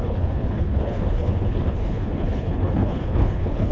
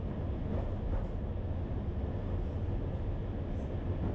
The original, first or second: second